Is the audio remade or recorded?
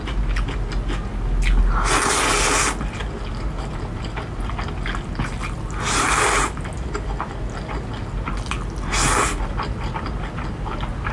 recorded